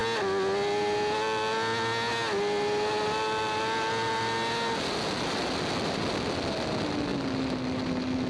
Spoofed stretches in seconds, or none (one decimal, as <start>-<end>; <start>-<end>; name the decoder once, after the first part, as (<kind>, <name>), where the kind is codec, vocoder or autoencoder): none